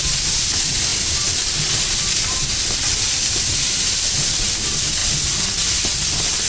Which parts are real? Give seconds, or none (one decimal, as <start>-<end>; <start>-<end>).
0.0-2.5; 4.5-6.5